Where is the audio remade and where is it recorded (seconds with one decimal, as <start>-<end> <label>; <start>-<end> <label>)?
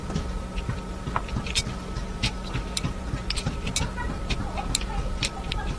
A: 0.0-5.8 recorded